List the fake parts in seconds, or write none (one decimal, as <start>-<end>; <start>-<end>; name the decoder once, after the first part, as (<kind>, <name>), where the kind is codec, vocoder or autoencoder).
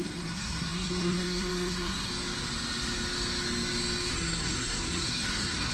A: 0.0-2.1 (codec, SNAC); 4.1-5.7